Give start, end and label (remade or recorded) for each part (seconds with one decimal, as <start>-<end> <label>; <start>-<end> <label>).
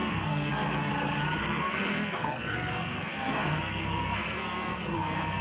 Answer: 0.0-0.9 remade; 0.9-1.4 recorded; 1.4-5.4 remade